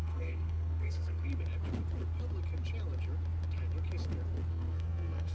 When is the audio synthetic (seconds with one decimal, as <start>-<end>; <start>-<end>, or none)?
0.0-1.3; 4.5-5.3